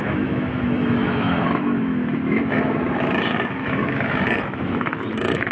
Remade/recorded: remade